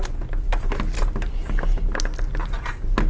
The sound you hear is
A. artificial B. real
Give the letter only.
B